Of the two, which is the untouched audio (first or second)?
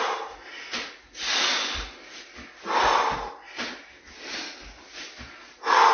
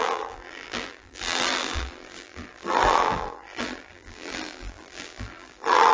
first